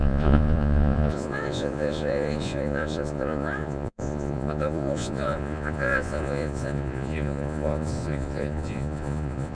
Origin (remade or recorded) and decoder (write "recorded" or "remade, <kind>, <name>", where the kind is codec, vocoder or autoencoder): remade, vocoder, Vocos